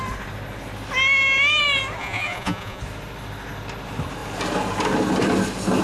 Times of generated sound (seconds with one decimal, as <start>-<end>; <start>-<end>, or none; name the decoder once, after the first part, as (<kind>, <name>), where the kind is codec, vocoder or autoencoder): 2.0-2.8 (vocoder, Vocos)